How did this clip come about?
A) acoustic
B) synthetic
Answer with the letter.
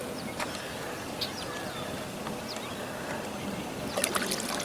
A